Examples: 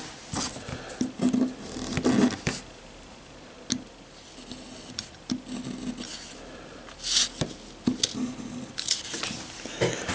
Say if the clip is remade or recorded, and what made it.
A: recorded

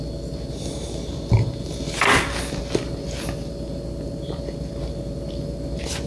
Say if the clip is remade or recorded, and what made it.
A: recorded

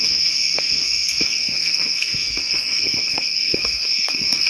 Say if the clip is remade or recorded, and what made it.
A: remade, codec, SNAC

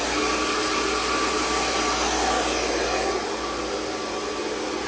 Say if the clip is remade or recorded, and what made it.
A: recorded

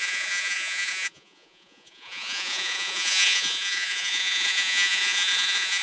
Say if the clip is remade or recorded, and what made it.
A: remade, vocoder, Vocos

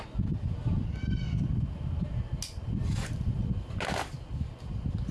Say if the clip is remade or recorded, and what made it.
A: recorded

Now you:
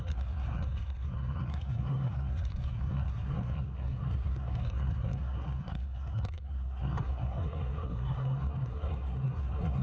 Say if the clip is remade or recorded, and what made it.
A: remade, codec, SNAC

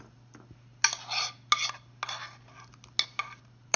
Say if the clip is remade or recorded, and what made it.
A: recorded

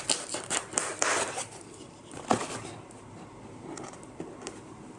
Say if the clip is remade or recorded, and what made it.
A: remade, vocoder, BigVGAN v2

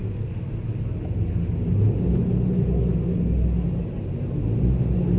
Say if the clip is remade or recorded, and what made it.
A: recorded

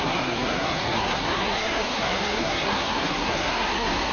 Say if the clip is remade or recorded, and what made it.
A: remade, codec, SNAC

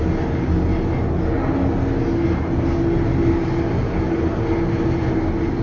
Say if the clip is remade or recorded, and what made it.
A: recorded